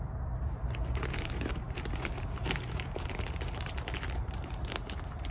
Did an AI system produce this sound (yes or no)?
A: yes